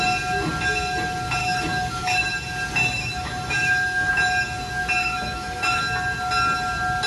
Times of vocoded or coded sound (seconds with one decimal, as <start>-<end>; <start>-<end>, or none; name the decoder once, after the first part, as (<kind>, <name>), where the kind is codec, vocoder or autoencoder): 1.4-2.3 (autoencoder, DAC-VAE); 2.8-4.1; 5.0-5.8